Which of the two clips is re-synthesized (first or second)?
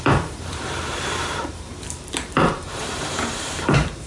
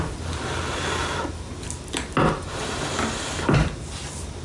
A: first